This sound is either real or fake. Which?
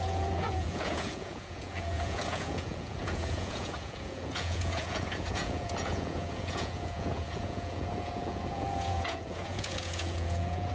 fake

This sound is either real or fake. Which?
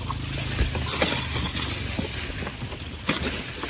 real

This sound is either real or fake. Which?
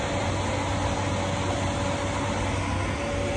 real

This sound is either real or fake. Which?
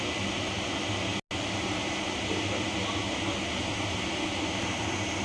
real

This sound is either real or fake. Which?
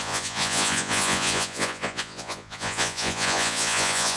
fake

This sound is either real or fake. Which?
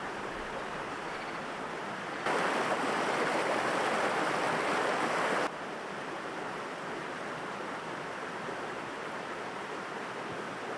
real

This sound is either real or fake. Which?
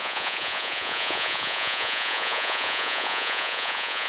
fake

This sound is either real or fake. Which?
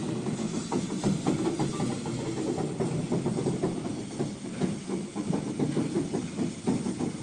real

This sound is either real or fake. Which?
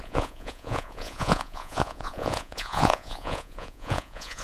fake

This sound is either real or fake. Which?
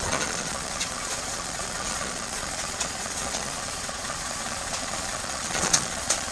fake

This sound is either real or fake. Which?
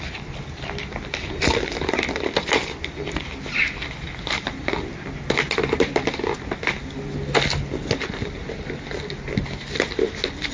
real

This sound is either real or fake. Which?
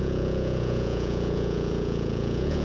fake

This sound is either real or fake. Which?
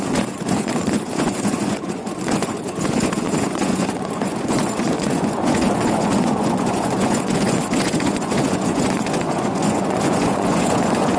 fake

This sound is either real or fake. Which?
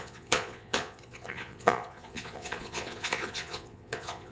fake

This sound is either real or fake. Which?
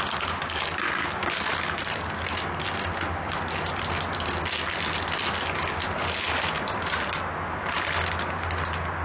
real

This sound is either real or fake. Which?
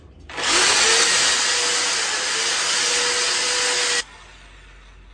real